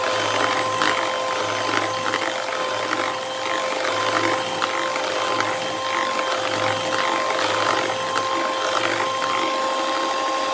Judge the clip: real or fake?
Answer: real